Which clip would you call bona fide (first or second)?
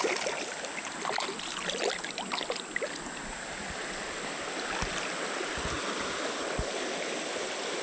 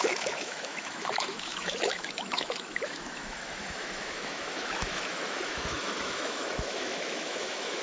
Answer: first